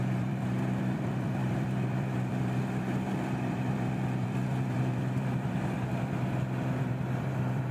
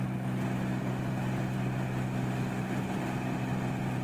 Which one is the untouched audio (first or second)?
second